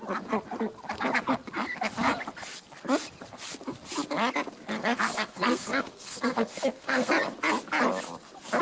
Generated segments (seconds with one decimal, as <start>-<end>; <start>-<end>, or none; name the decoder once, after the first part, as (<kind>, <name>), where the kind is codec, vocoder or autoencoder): 4.8-7.1 (codec, SNAC)